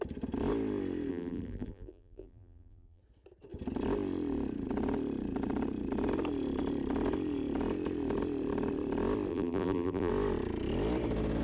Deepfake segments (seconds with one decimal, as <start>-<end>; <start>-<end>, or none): 1.1-3.0; 9.3-10.1